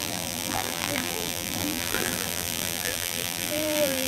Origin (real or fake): fake